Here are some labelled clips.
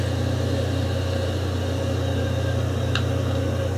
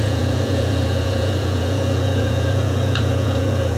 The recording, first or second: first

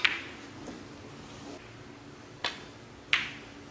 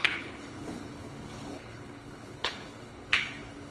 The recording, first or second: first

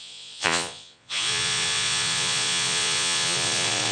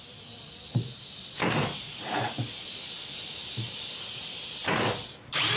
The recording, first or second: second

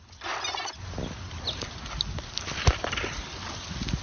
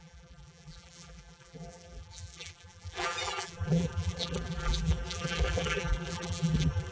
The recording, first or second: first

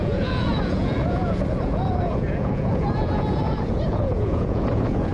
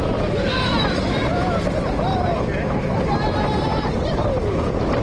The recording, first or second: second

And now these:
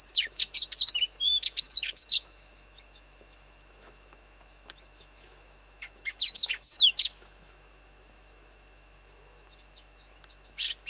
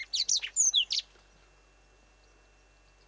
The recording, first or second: second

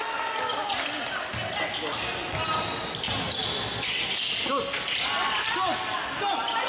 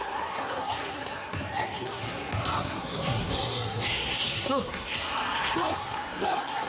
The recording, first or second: first